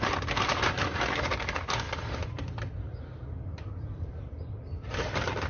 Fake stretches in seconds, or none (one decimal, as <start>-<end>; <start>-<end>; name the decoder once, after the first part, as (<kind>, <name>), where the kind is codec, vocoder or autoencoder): 2.2-4.9 (vocoder, BigVGAN v2)